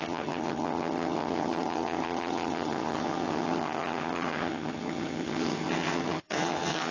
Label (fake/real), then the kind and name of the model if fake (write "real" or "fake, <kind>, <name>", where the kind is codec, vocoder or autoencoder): fake, vocoder, HiFi-GAN